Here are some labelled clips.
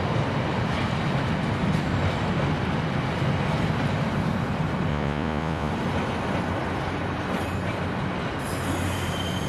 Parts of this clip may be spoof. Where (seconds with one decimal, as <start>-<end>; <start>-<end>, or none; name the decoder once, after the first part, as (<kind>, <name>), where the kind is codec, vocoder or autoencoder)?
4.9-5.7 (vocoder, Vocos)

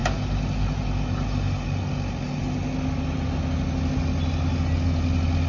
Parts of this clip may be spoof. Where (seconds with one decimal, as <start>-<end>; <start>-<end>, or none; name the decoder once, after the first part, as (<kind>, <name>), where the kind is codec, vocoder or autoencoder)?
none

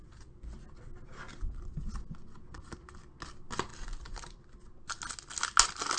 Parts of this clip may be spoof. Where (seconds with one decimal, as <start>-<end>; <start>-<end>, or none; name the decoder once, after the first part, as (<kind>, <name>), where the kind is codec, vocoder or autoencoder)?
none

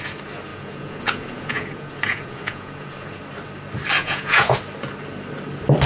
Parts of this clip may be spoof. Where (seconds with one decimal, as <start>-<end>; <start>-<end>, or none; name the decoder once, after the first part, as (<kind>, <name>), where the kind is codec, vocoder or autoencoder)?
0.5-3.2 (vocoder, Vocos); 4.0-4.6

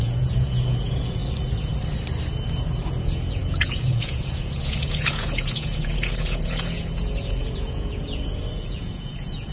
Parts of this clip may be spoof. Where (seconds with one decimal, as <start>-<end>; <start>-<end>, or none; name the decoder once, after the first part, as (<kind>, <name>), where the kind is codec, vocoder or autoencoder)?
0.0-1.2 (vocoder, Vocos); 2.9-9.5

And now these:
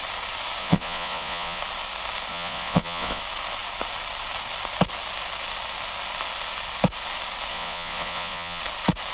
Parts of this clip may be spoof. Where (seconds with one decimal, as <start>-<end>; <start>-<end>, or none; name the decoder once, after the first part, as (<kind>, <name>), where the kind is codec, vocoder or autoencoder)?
0.6-1.6 (vocoder, Vocos); 2.3-3.2; 7.5-8.6

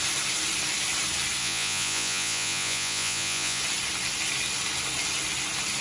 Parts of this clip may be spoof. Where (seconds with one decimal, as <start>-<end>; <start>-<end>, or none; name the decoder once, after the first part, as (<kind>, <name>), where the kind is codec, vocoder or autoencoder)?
1.4-3.6 (vocoder, Vocos)

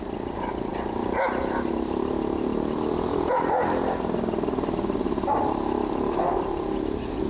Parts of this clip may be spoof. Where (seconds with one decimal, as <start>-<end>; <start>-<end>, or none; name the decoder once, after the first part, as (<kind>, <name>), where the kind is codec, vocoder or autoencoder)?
none